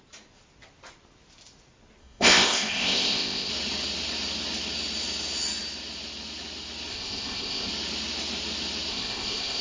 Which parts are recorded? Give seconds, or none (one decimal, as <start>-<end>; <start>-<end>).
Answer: 0.0-2.0; 3.5-6.9; 7.7-8.9